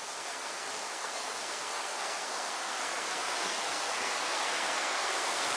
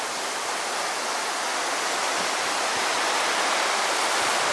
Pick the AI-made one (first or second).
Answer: first